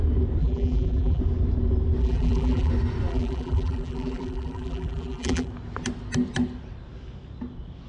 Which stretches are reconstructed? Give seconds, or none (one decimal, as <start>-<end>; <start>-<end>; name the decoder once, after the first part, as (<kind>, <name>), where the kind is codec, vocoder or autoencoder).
0.4-1.2 (vocoder, BigVGAN v2); 2.0-2.7; 3.1-5.5